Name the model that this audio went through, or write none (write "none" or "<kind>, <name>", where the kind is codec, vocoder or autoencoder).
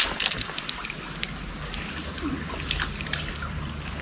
none